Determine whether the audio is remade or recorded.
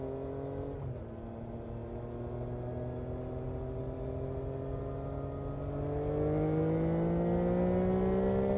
recorded